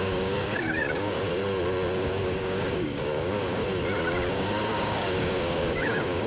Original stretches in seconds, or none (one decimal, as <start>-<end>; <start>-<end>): 1.4-2.0; 3.6-4.3